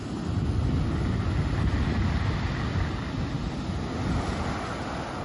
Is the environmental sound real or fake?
real